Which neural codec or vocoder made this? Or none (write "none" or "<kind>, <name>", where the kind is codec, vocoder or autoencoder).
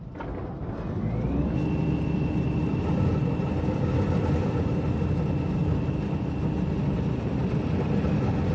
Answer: none